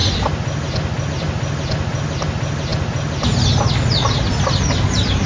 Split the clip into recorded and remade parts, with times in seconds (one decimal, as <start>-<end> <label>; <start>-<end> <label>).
0.0-5.3 recorded